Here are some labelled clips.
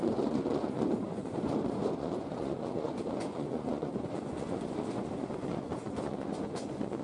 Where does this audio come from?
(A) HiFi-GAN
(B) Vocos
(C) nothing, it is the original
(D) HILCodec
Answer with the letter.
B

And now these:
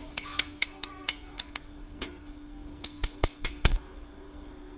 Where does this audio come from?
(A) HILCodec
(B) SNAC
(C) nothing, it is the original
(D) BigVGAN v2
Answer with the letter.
B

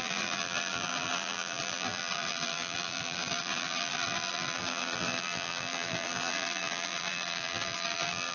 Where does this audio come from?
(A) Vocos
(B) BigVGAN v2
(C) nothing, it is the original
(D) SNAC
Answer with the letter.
B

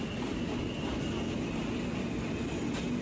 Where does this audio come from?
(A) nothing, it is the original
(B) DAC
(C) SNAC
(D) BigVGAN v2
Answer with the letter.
A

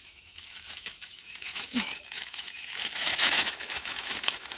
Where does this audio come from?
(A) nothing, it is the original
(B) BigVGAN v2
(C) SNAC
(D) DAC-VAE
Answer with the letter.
D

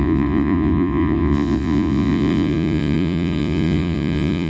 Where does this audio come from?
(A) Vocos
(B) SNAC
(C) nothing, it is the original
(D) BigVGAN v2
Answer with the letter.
A